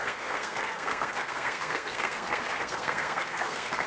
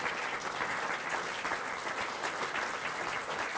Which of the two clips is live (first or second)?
second